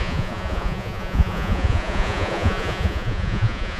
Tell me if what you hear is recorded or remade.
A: remade